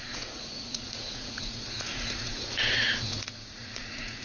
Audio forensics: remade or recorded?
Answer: remade